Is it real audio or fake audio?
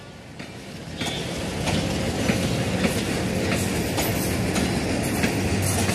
real